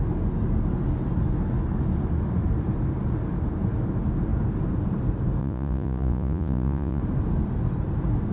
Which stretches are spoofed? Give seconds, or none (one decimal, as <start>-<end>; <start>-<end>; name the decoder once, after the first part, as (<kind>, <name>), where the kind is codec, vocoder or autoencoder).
5.4-7.0 (vocoder, Vocos)